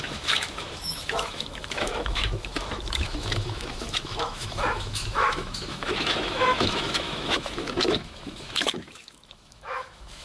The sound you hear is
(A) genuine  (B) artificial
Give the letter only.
B